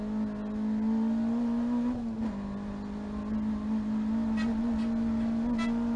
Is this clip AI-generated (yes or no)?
no